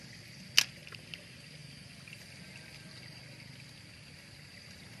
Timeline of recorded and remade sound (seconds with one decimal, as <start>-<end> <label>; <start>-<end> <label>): 0.0-5.0 recorded